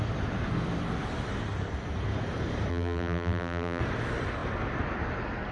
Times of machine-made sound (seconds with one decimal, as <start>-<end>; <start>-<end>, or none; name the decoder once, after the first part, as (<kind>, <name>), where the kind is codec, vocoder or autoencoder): 2.7-3.8 (vocoder, BigVGAN v2)